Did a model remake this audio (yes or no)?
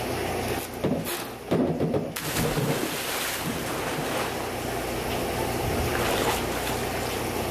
no